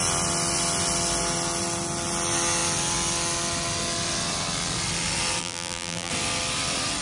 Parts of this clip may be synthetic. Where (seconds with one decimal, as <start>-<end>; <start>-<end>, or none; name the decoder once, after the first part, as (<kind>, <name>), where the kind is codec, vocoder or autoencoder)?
5.4-6.1 (vocoder, BigVGAN v2)